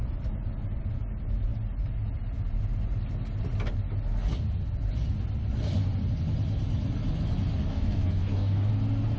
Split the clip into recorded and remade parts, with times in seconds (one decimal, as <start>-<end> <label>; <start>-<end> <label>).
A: 0.0-7.7 recorded; 7.7-8.7 remade; 8.7-9.2 recorded